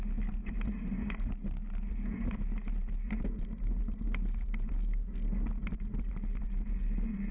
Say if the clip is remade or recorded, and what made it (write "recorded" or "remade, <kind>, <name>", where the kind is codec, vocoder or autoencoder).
recorded